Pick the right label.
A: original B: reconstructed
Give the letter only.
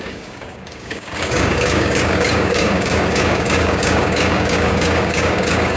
B